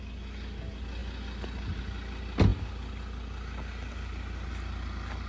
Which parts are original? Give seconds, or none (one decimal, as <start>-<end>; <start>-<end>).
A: 0.0-5.3